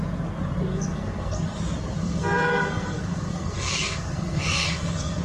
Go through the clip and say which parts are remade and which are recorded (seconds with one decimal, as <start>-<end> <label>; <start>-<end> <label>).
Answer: 0.0-0.7 recorded; 0.7-1.6 remade; 1.6-2.0 recorded; 2.0-5.2 remade